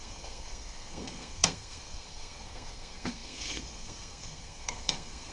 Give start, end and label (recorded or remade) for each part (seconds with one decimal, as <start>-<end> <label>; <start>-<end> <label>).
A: 0.0-5.3 remade